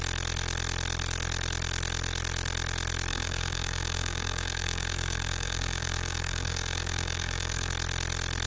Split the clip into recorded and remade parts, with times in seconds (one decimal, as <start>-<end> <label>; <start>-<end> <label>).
0.0-3.1 recorded; 3.1-7.7 remade; 7.7-8.5 recorded